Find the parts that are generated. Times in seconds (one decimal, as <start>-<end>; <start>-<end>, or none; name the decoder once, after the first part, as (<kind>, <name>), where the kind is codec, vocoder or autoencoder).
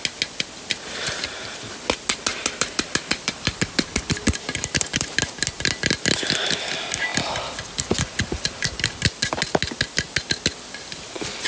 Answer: 2.3-5.1 (vocoder, BigVGAN v2); 7.1-9.2